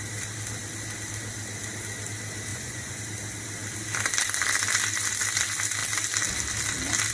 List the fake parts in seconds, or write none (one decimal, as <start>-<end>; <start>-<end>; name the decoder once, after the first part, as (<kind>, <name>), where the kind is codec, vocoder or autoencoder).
2.5-3.0 (vocoder, Vocos)

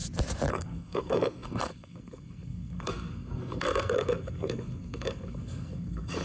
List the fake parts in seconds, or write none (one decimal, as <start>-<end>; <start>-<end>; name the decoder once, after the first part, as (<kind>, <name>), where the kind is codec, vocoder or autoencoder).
0.5-6.2 (codec, SNAC)

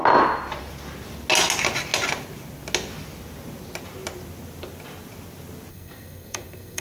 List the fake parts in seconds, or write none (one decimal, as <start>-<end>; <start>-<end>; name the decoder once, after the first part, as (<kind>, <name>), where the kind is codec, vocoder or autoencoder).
5.7-6.8 (codec, SNAC)

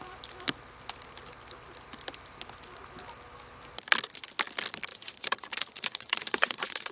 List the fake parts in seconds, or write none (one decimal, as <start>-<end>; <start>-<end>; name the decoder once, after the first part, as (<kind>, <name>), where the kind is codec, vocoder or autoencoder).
4.9-6.9 (vocoder, Vocos)

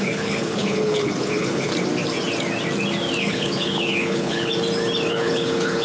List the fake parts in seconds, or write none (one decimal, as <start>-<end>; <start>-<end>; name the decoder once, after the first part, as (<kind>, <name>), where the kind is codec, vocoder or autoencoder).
0.0-1.7 (codec, HILCodec); 3.2-4.5; 5.1-5.8

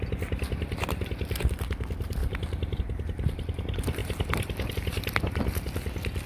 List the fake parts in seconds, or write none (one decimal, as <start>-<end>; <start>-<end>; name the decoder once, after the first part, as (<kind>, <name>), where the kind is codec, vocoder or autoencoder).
none